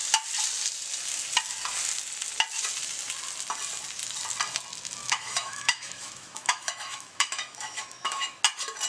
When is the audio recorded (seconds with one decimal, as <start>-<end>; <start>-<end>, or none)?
0.0-5.0; 8.4-8.9